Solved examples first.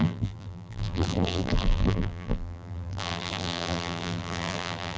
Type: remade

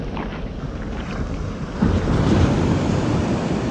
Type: recorded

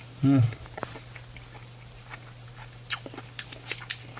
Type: remade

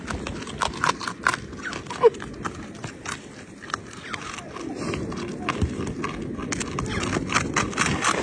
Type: recorded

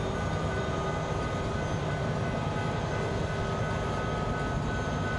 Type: recorded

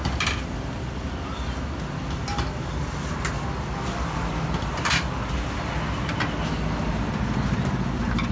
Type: recorded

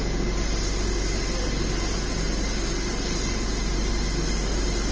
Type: remade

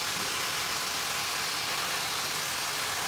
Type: recorded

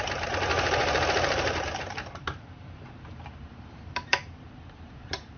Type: remade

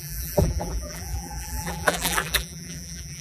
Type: remade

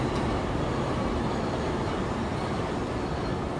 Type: recorded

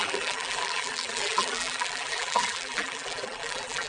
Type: remade